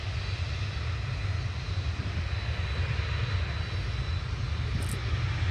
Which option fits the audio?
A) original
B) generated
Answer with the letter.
A